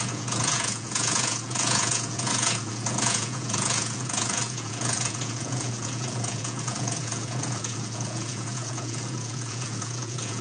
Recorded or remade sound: remade